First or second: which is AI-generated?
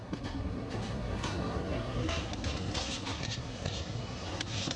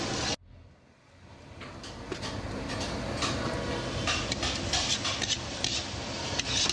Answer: first